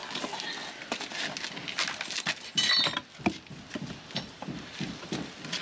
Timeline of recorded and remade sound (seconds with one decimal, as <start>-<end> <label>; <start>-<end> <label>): 0.0-5.6 recorded